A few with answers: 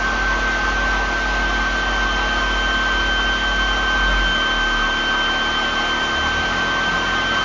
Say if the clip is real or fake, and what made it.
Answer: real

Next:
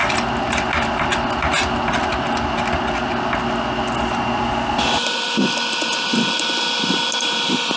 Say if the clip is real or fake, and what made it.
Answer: real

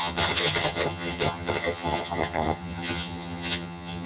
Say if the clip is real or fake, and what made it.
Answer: fake, vocoder, HiFi-GAN